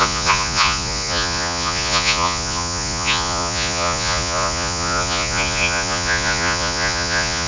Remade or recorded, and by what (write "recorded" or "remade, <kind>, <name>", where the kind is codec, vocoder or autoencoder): remade, vocoder, Vocos